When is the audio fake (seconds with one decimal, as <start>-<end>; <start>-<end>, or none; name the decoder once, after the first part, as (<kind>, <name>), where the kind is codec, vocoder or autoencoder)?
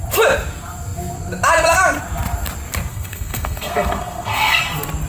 2.9-4.6 (codec, SNAC)